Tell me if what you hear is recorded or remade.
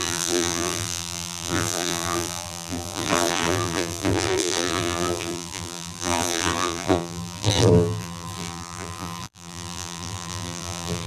remade